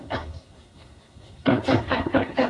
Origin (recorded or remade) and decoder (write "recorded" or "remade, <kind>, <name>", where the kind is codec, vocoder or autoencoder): remade, codec, SNAC